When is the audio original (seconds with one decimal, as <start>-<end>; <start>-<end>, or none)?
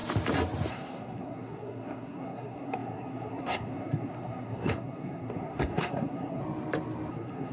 0.0-0.7; 6.4-7.1